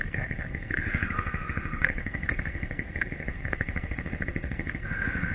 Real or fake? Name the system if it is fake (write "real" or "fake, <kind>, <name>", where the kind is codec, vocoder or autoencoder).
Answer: fake, codec, SNAC